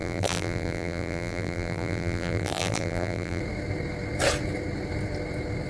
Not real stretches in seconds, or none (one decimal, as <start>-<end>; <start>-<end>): 0.0-3.4